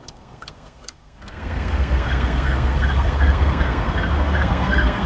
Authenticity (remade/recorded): remade